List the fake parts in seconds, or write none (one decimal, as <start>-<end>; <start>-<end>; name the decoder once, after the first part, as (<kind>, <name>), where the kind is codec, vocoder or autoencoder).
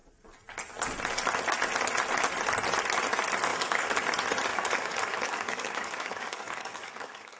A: 3.5-4.0 (codec, DAC); 4.5-7.4